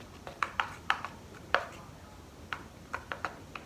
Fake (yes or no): no